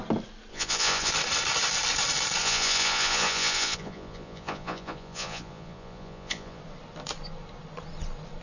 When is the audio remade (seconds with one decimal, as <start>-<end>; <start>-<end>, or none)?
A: 0.5-1.1; 2.4-6.6